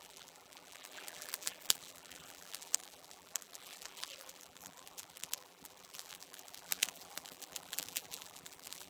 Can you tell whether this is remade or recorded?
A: remade